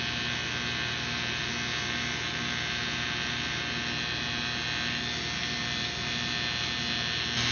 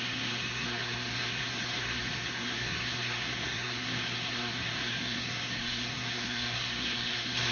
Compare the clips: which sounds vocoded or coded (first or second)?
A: second